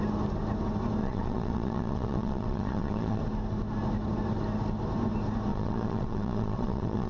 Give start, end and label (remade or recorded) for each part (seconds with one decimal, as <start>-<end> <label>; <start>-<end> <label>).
0.0-1.0 recorded; 1.0-3.2 remade; 3.2-5.5 recorded; 5.5-7.1 remade